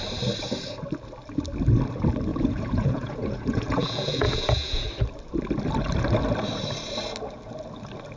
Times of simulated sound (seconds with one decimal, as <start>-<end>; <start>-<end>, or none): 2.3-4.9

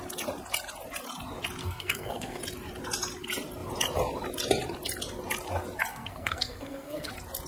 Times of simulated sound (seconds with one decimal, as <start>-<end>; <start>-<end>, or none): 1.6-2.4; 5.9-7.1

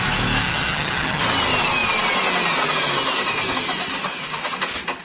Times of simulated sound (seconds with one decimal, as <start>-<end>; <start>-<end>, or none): 0.4-1.2